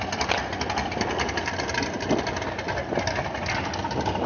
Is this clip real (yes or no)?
yes